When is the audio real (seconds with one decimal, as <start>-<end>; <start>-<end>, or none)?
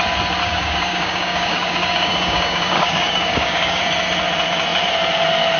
0.0-0.4; 3.8-5.6